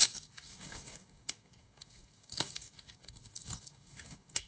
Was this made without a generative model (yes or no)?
no